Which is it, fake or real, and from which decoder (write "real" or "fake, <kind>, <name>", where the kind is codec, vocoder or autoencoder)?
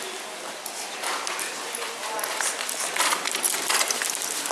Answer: real